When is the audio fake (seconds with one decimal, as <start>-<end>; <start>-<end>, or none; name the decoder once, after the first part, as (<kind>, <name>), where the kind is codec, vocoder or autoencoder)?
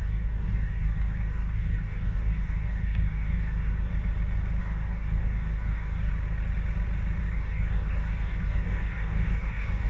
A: 0.0-3.9 (codec, DAC); 4.6-6.1; 7.2-9.9